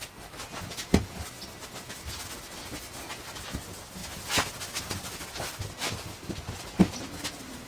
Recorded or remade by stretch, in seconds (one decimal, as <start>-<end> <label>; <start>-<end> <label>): 0.0-7.7 recorded

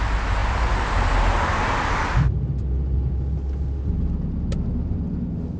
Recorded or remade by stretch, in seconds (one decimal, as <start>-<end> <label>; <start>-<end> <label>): 0.0-5.6 recorded

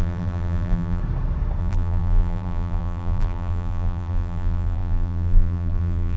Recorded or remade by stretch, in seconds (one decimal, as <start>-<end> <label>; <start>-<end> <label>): 0.0-1.0 remade; 1.0-1.6 recorded; 1.6-6.2 remade

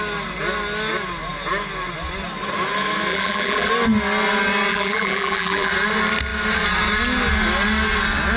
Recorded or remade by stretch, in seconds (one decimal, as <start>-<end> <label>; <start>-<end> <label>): 0.0-3.1 recorded; 3.1-3.7 remade; 3.7-4.7 recorded; 4.7-5.7 remade; 5.7-8.4 recorded

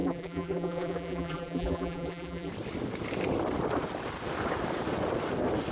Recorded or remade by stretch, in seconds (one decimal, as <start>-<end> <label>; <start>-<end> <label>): 0.0-2.5 remade; 2.5-5.7 recorded

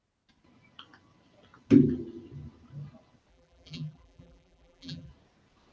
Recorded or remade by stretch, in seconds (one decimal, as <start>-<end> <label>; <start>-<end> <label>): 0.0-3.3 recorded; 3.3-5.1 remade; 5.1-5.7 recorded

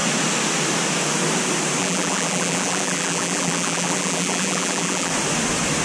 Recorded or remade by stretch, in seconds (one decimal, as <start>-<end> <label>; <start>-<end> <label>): 0.0-1.8 recorded; 1.8-5.1 remade; 5.1-5.8 recorded

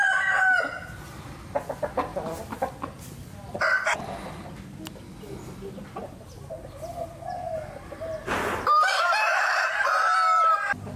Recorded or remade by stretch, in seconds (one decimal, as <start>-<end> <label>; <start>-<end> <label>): 0.0-8.9 recorded; 8.9-10.5 remade; 10.5-11.0 recorded